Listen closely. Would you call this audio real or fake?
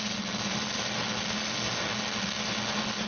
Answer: real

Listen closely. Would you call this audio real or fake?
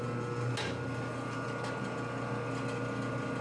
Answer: real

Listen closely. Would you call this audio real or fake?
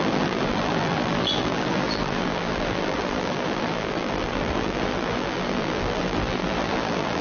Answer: fake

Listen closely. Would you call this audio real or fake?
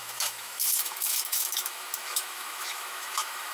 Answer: fake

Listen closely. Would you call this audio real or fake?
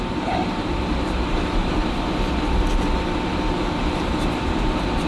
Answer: fake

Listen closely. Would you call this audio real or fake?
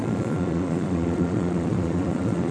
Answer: fake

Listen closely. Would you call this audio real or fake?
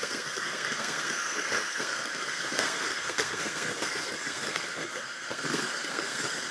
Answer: fake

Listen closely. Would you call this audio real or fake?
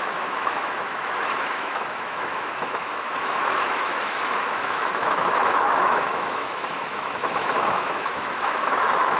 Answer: fake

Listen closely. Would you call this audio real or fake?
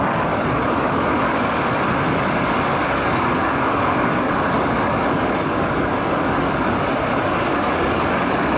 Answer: fake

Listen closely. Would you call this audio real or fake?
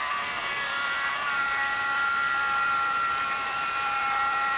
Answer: fake